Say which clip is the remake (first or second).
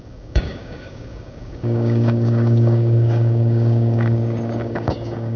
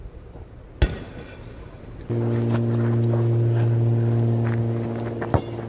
first